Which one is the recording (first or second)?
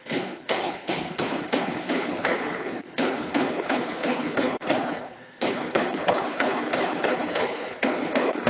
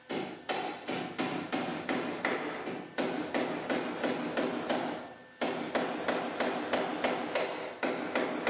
second